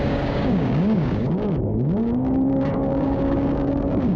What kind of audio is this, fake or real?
fake